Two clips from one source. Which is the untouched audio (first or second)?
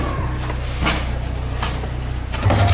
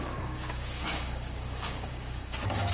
first